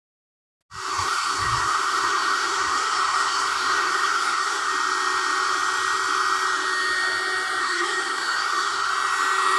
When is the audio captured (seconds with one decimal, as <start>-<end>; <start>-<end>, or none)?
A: 0.0-0.9; 4.7-7.6; 8.9-9.6